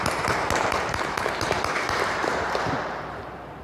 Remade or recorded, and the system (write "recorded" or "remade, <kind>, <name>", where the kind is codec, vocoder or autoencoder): remade, vocoder, BigVGAN v2